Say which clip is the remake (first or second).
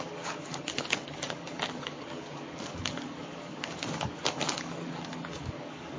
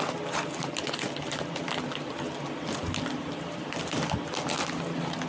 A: first